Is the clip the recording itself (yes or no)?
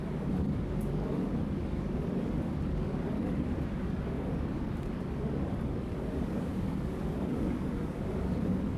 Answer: no